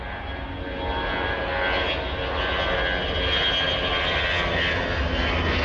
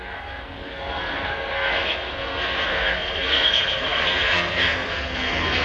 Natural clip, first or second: first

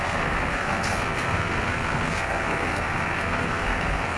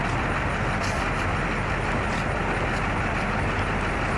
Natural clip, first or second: second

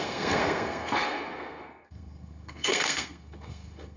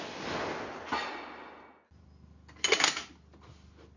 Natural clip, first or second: second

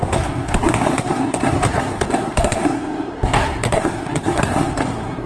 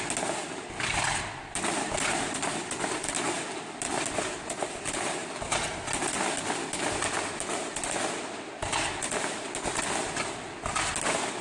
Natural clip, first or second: second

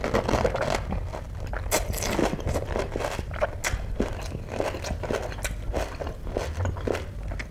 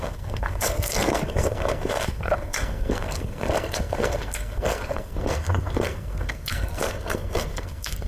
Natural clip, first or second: first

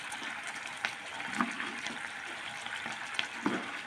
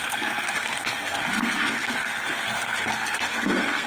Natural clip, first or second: first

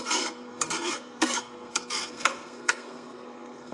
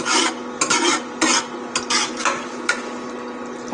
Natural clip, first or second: second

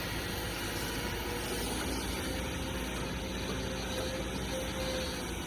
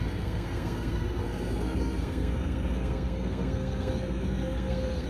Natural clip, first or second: first